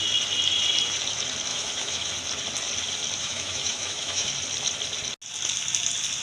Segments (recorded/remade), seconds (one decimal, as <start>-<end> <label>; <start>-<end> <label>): 0.0-1.5 recorded; 1.5-2.1 remade; 2.1-3.2 recorded; 3.2-4.3 remade; 4.3-6.2 recorded